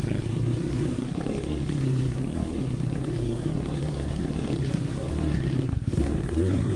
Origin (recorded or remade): remade